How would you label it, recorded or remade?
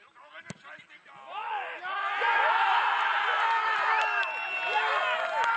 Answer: recorded